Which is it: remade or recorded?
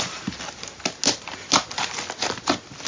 recorded